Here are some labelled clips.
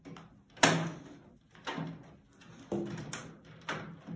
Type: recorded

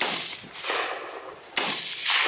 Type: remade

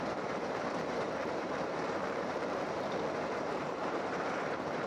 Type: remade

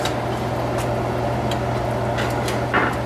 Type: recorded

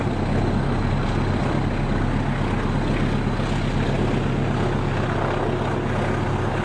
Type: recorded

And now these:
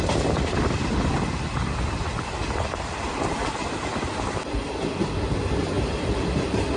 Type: remade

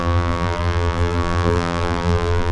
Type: remade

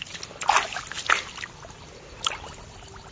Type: recorded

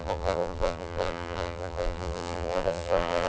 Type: remade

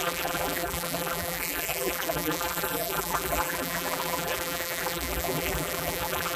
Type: remade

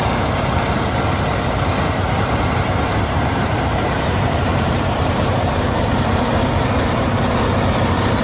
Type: remade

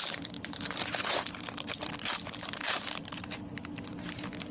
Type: remade